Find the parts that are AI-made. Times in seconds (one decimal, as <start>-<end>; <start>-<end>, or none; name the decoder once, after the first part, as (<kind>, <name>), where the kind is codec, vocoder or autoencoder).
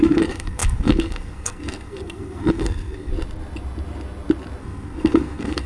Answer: 0.0-3.1 (codec, SNAC); 4.6-5.7